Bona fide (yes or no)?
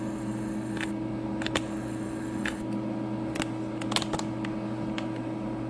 yes